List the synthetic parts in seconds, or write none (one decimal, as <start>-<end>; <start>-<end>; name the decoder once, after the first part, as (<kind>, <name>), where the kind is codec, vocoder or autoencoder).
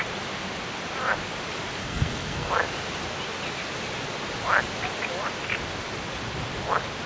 1.8-2.5 (codec, SNAC)